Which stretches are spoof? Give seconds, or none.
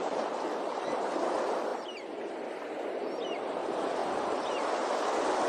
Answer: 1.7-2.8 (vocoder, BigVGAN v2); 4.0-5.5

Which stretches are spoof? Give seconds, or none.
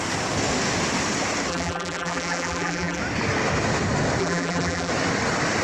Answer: 1.5-3.0 (vocoder, BigVGAN v2); 4.2-4.9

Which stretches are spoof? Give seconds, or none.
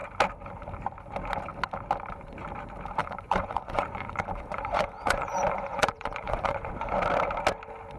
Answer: 3.0-6.7 (vocoder, Vocos)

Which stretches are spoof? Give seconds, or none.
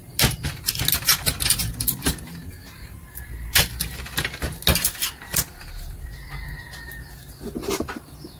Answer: 2.6-3.8 (vocoder, BigVGAN v2)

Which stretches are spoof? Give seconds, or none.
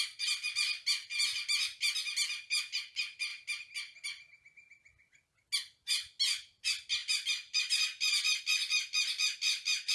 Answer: 7.0-7.8 (vocoder, BigVGAN v2)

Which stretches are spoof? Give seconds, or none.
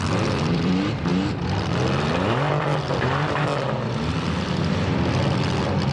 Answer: 0.0-1.1 (vocoder, BigVGAN v2); 4.6-5.9